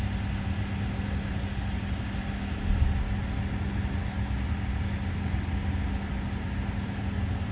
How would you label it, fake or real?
real